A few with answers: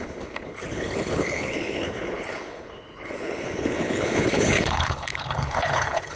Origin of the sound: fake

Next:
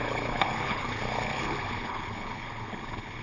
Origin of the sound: fake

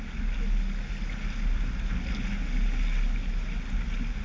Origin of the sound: real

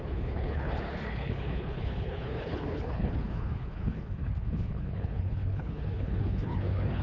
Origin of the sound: fake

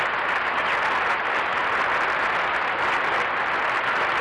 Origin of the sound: real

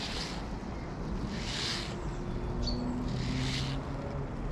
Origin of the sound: real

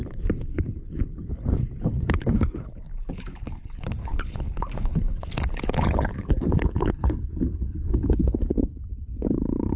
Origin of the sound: fake